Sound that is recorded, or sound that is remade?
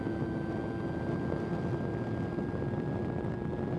recorded